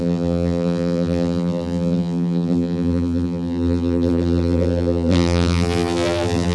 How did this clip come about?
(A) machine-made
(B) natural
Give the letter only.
A